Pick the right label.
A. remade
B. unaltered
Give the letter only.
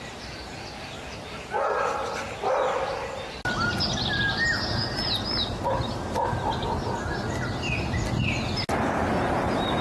B